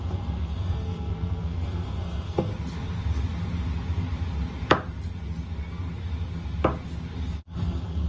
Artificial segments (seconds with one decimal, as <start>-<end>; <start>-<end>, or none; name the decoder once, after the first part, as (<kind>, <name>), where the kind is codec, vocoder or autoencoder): 0.0-2.5 (codec, SNAC); 7.4-8.1